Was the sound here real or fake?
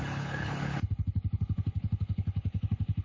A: fake